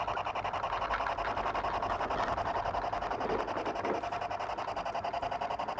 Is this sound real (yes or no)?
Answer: yes